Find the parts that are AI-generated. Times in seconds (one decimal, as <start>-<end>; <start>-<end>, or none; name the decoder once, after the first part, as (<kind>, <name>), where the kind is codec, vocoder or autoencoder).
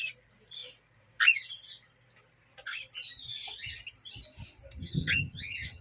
4.8-5.8 (vocoder, HiFi-GAN)